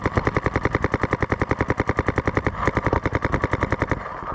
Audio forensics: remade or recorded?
recorded